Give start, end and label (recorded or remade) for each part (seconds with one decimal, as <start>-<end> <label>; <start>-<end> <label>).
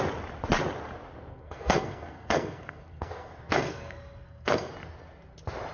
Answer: 0.0-1.3 recorded; 1.3-4.7 remade; 4.7-5.7 recorded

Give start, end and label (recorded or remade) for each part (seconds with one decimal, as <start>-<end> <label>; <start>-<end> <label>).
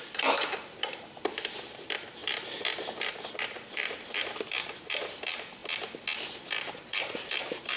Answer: 0.0-5.6 remade; 5.6-6.2 recorded; 6.2-7.8 remade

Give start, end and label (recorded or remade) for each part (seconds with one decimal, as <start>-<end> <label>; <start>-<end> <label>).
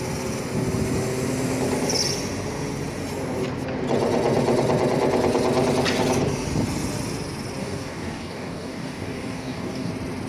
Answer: 0.0-7.6 recorded; 7.6-9.9 remade; 9.9-10.3 recorded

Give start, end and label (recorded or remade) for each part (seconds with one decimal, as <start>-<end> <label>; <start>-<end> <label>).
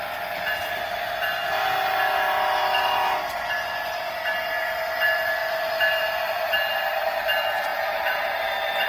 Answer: 0.0-7.7 recorded; 7.7-8.4 remade; 8.4-8.9 recorded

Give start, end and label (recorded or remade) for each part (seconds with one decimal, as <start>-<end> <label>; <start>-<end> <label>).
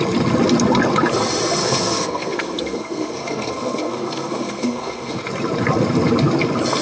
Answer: 0.0-1.6 recorded; 1.6-5.2 remade; 5.2-6.8 recorded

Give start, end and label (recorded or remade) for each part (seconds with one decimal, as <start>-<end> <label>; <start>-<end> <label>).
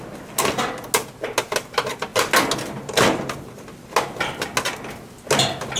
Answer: 0.0-5.8 recorded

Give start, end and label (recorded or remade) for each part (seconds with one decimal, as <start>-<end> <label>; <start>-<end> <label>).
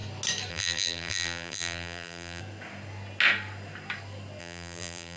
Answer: 0.0-0.5 recorded; 0.5-2.4 remade; 2.4-4.4 recorded; 4.4-5.2 remade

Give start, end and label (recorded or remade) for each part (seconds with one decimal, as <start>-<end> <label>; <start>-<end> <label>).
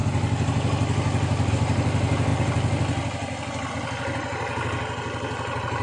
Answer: 0.0-5.8 recorded